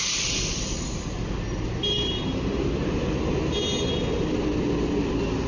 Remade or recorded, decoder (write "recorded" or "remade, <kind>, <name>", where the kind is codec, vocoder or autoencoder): recorded